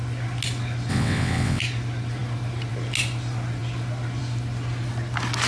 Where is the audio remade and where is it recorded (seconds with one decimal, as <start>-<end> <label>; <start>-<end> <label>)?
0.0-0.9 recorded; 0.9-1.6 remade; 1.6-5.5 recorded